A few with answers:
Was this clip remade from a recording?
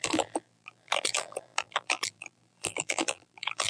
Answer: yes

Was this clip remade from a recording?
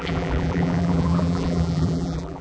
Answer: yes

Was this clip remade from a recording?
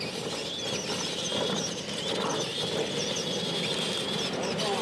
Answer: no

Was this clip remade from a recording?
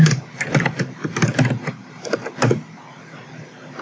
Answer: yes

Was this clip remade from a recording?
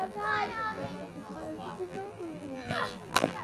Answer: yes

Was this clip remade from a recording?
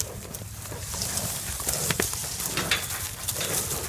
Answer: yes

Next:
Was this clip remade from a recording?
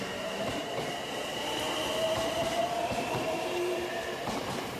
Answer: yes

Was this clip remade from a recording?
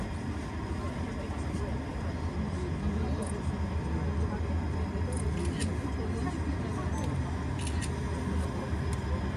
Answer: no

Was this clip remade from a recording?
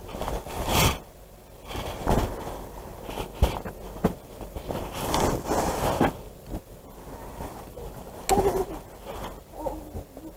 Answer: no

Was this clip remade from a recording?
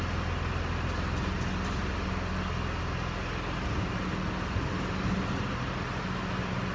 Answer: no